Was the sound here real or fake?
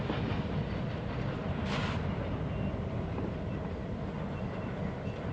fake